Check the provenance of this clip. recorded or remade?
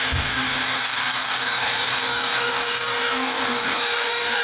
remade